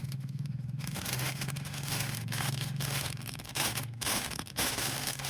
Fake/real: fake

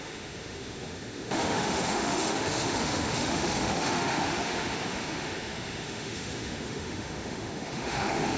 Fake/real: fake